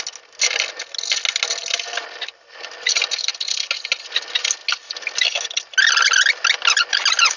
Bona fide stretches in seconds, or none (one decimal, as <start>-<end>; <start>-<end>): 0.0-7.4